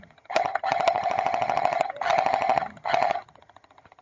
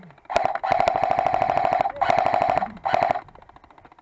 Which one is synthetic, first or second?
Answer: first